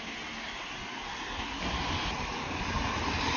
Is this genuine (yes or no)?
yes